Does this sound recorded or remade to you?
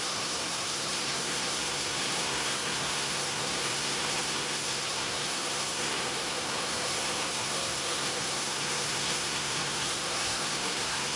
remade